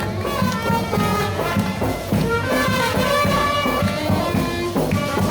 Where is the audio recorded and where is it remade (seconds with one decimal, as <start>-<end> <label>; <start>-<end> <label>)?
0.0-1.1 recorded; 1.1-4.3 remade; 4.3-5.3 recorded